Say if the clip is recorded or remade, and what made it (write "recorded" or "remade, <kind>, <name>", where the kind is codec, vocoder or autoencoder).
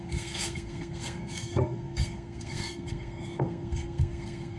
remade, codec, SNAC